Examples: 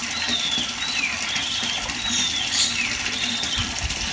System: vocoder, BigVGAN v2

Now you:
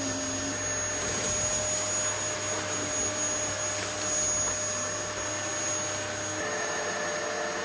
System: none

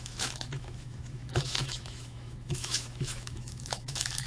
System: autoencoder, DAC-VAE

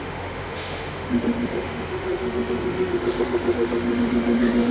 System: autoencoder, DAC-VAE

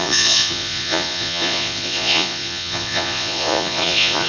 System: vocoder, Vocos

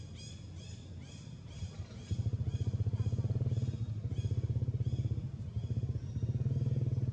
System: none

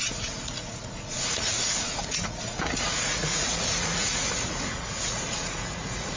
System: vocoder, Vocos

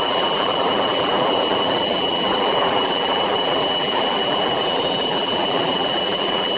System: vocoder, BigVGAN v2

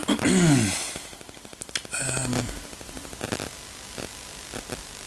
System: none